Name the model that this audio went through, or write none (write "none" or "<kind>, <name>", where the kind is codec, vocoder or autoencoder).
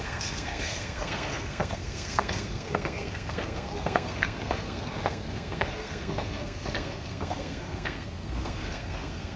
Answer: codec, SNAC